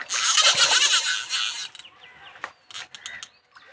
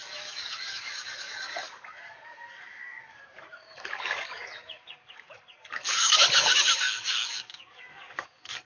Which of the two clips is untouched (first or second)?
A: first